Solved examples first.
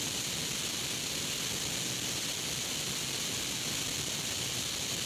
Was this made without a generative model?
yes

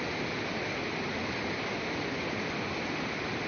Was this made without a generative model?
yes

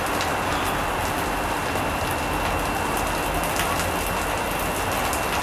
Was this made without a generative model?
yes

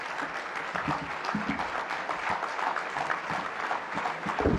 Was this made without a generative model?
yes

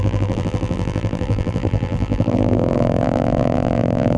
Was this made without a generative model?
no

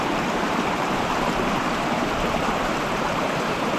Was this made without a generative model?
no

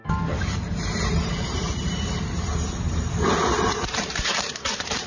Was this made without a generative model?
no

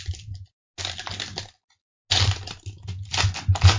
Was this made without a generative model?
yes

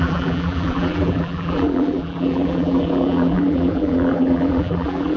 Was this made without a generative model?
no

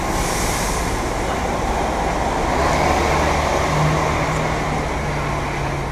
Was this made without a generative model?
yes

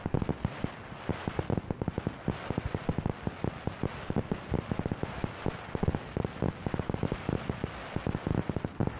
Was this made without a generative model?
yes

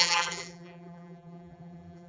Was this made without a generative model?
no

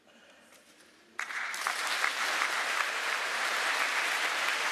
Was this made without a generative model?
no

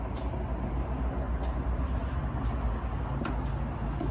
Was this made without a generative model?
yes